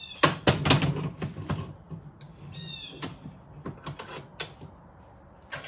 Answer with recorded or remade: recorded